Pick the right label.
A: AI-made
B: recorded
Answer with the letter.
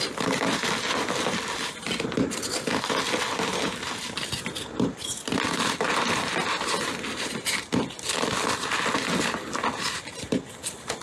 B